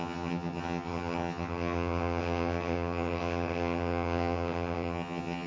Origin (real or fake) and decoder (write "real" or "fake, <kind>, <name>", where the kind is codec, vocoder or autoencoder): fake, vocoder, HiFi-GAN